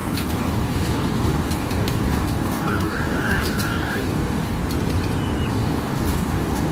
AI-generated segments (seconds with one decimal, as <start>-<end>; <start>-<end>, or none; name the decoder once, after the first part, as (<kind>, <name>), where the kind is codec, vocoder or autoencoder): 0.0-4.6 (codec, DAC); 5.5-6.7